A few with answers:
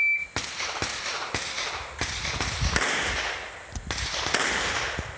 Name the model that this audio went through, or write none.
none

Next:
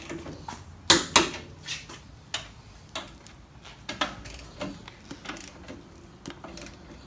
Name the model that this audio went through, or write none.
none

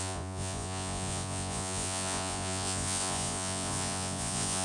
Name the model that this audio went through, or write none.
vocoder, Vocos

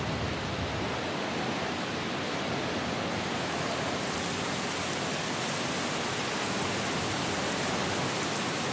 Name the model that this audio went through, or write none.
none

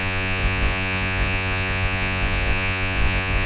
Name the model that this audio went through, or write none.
vocoder, Vocos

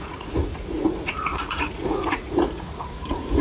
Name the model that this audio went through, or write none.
vocoder, Vocos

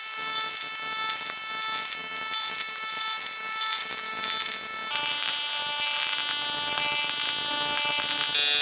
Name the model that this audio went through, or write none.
none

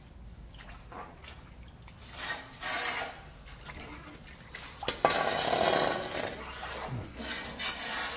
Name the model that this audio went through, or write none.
none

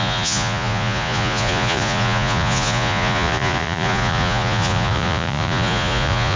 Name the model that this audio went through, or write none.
vocoder, Vocos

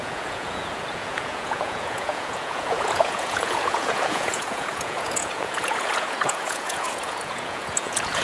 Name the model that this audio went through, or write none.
vocoder, Vocos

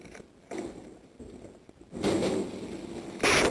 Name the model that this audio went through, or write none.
none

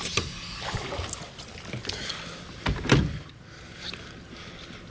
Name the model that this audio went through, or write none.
none